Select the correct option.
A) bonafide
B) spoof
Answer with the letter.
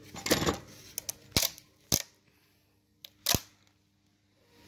A